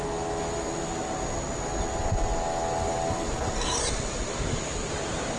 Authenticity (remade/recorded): recorded